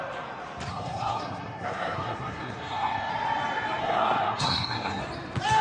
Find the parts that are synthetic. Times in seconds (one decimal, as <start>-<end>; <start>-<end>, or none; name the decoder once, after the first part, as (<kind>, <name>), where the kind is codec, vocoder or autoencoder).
0.7-3.1 (codec, SNAC); 3.8-5.0